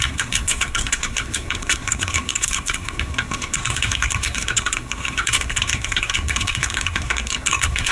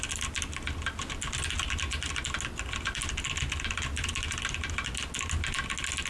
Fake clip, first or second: first